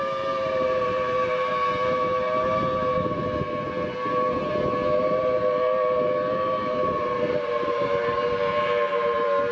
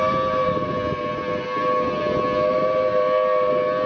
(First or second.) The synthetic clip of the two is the first